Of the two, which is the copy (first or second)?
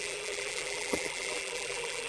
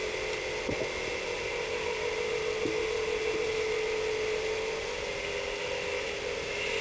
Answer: first